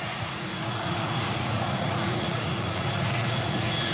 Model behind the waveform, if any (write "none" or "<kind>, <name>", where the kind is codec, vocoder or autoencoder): vocoder, Vocos